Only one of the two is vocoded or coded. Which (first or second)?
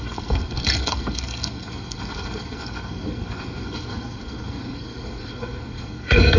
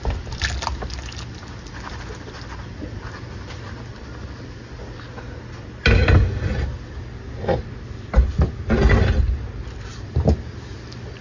first